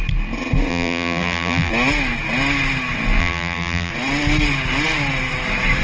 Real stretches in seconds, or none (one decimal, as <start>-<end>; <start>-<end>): 0.0-0.7; 1.7-3.2; 3.9-5.8